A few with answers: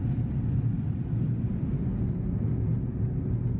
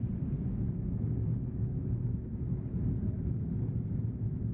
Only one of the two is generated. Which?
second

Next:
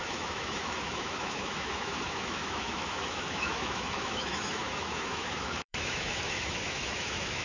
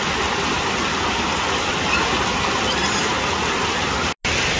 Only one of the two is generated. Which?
first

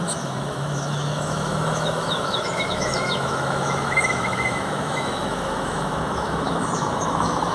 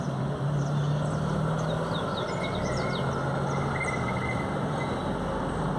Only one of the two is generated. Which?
first